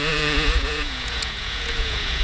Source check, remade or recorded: remade